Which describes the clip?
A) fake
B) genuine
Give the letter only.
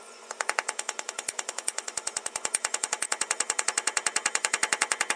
A